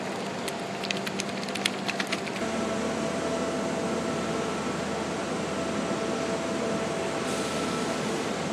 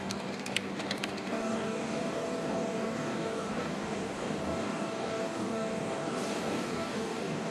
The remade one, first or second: second